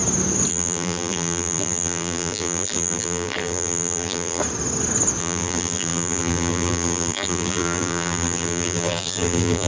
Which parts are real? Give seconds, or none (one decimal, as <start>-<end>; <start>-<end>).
0.0-0.5; 4.4-5.2

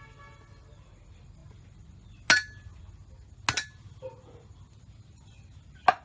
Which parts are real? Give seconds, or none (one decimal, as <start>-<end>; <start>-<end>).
0.0-6.0

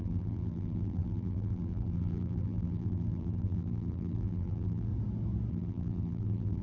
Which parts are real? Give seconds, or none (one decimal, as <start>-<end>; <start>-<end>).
4.9-5.5

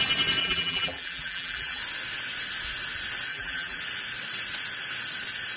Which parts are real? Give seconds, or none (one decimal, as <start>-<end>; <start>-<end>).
0.0-0.4; 1.8-3.3; 3.8-5.6

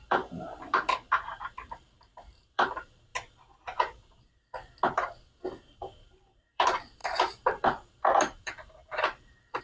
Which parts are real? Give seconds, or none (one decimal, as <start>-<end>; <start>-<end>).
3.1-5.6

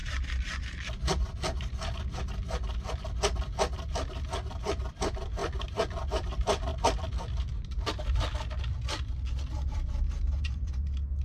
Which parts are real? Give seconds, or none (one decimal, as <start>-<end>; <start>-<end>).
0.0-4.6; 5.4-6.1; 6.7-9.5

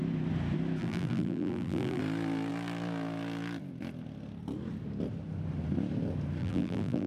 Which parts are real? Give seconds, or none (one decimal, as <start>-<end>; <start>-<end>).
0.0-0.8; 2.0-6.4